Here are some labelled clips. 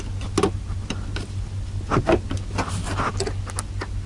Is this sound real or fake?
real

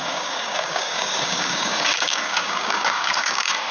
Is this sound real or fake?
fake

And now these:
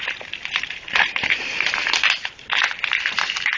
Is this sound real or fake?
fake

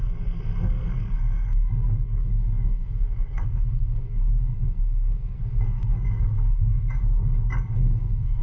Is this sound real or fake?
fake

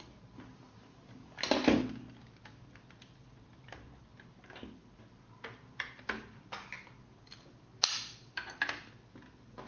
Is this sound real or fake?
real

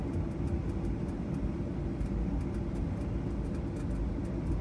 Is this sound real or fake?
real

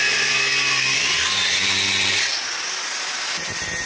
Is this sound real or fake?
real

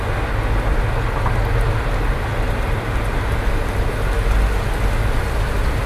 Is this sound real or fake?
real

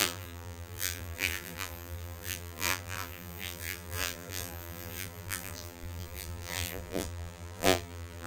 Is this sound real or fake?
fake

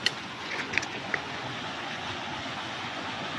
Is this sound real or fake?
fake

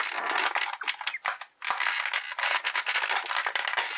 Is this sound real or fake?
real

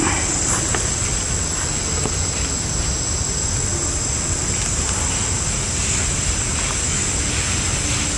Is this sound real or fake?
real